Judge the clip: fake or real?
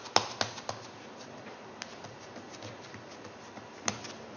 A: real